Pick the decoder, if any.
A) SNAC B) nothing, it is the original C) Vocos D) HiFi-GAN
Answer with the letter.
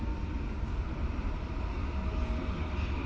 B